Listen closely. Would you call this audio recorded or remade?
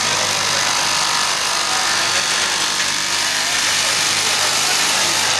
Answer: recorded